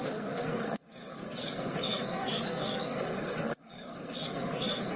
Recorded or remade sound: remade